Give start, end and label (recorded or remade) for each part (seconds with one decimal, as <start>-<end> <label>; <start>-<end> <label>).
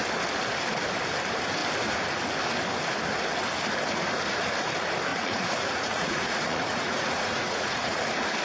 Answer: 0.0-5.1 recorded; 5.1-8.0 remade; 8.0-8.4 recorded